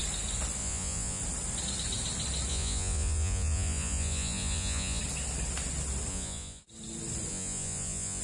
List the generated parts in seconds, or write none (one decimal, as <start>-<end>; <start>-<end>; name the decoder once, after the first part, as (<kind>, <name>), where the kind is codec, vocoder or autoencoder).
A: 0.6-1.2 (vocoder, Vocos); 2.5-5.0; 6.1-6.6; 7.3-8.2